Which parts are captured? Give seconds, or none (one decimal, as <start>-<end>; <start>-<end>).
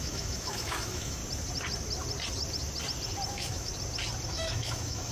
1.2-3.3; 3.7-4.3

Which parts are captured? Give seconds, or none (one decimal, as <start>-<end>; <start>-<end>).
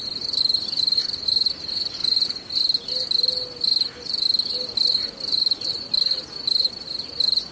0.0-7.5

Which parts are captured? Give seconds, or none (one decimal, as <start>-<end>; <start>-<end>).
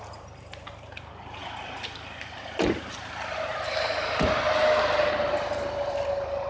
0.0-6.5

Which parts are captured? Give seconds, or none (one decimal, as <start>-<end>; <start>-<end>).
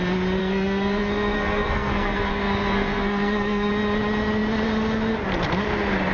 0.0-0.4; 3.7-6.1